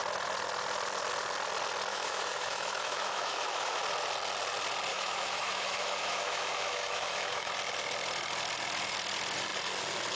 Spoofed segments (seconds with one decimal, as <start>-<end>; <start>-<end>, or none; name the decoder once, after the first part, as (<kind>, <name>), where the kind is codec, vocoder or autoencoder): 1.9-3.8 (autoencoder, DAC-VAE); 4.9-7.5